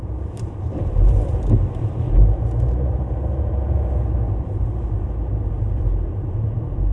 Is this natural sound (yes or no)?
no